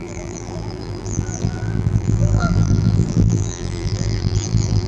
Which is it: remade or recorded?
remade